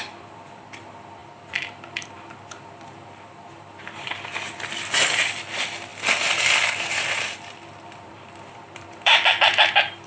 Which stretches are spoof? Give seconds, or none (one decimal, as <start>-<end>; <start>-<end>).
0.0-10.1